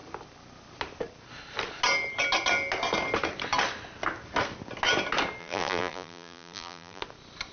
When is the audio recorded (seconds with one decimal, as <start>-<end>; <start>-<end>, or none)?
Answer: 0.0-5.4; 7.0-7.5